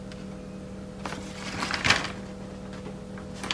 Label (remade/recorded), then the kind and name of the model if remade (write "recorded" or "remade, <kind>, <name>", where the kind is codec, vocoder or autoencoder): recorded